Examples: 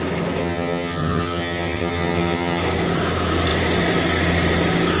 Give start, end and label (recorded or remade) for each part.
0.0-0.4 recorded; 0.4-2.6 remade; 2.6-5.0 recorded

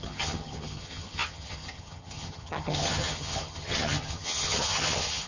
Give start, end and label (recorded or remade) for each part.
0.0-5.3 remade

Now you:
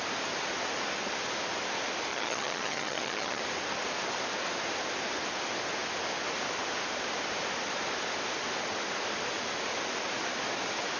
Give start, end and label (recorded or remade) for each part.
0.0-2.1 recorded; 2.1-3.4 remade; 3.4-11.0 recorded